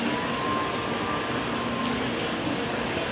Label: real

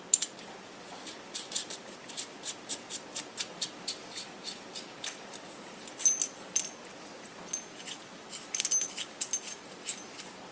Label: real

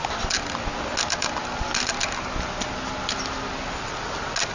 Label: real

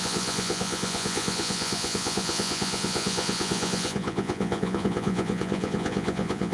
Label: fake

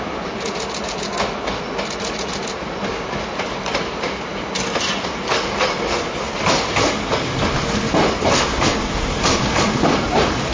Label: real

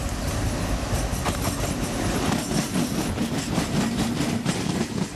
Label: fake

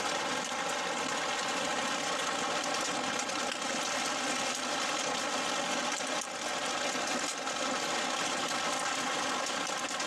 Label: real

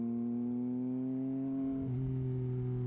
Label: real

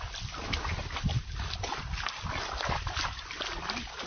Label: real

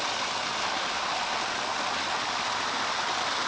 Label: real